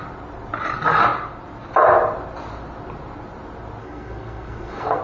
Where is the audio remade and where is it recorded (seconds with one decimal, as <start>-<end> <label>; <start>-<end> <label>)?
0.0-3.8 recorded; 3.8-5.0 remade